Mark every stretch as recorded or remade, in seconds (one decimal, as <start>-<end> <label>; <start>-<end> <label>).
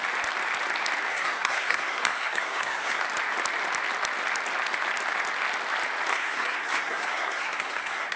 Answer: 0.0-1.1 recorded; 1.1-3.0 remade; 3.0-6.1 recorded; 6.1-8.2 remade